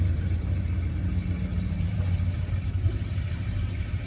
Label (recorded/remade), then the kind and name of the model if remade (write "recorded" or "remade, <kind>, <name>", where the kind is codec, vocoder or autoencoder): remade, vocoder, BigVGAN v2